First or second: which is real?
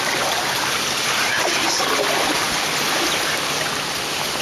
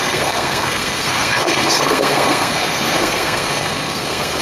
first